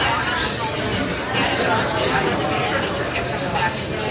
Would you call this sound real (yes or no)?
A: yes